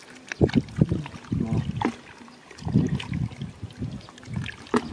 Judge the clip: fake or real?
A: real